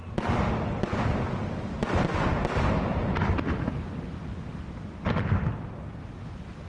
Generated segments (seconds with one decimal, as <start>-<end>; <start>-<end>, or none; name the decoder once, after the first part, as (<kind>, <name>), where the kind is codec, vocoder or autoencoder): none